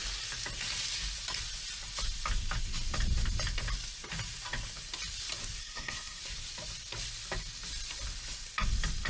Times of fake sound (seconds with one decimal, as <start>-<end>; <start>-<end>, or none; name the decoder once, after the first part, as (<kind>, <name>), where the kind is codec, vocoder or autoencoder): 5.6-6.2 (codec, SNAC)